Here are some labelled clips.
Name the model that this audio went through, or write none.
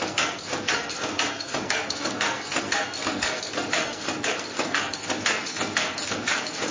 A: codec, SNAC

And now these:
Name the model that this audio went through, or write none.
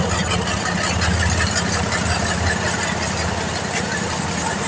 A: none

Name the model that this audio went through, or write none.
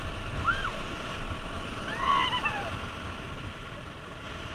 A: none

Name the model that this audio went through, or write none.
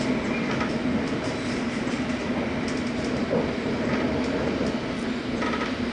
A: none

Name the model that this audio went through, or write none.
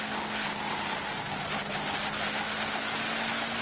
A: none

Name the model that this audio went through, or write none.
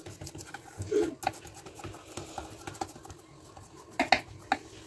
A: none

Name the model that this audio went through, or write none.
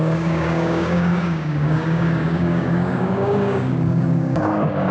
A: codec, DAC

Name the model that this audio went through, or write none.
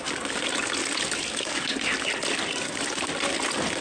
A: none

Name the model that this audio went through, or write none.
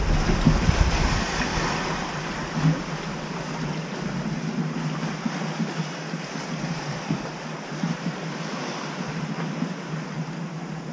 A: none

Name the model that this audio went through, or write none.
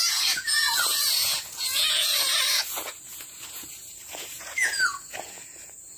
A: vocoder, Vocos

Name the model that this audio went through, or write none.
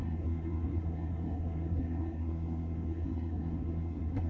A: codec, SNAC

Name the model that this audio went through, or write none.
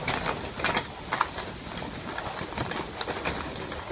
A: none